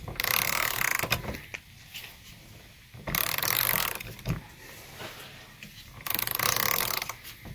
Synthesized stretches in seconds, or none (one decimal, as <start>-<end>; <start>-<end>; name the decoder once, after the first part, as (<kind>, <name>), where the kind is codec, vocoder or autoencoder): none